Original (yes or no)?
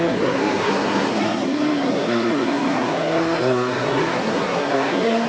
no